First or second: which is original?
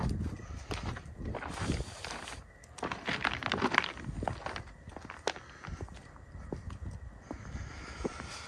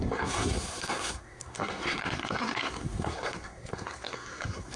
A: first